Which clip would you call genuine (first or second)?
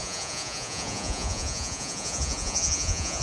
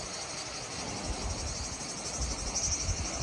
second